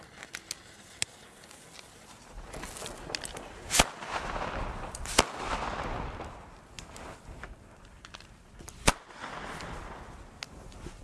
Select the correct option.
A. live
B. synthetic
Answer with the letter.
A